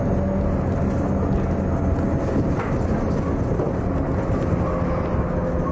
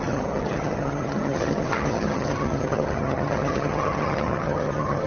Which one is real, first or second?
first